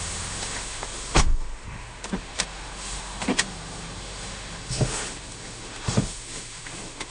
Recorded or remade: remade